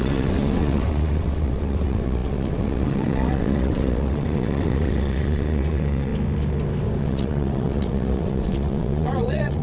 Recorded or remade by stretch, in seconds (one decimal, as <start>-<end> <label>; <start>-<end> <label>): 0.0-6.1 remade; 6.1-7.0 recorded; 7.0-9.6 remade